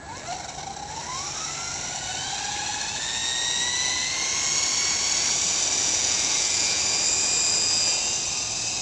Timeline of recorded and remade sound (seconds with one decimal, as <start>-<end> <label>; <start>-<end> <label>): 0.0-5.8 recorded; 5.8-6.8 remade; 6.8-8.8 recorded